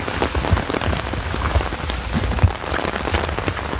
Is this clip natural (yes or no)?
yes